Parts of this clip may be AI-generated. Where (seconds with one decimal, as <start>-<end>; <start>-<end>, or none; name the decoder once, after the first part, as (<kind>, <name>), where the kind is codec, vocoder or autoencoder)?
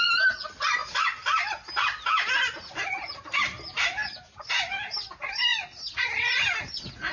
none